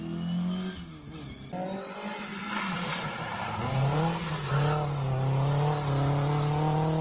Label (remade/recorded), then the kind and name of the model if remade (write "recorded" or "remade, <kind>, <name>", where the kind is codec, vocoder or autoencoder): recorded